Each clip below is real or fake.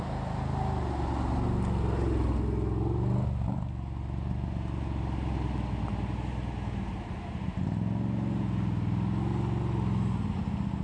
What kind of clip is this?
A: real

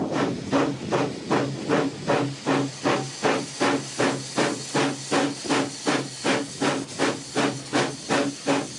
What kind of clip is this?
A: real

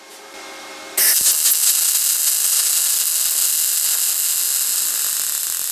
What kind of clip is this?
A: real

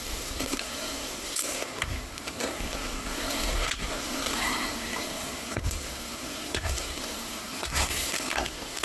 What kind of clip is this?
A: fake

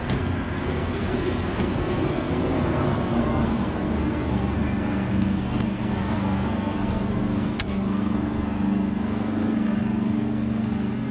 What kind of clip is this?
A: fake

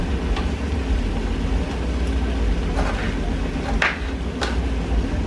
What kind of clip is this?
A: real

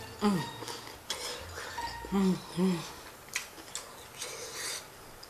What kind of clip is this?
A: real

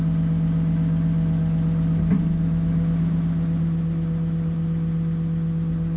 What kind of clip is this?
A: real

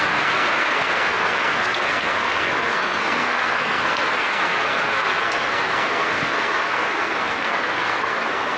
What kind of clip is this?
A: fake